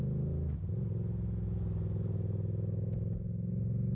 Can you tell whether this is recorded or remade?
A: recorded